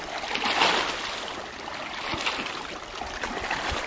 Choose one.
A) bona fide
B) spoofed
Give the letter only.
A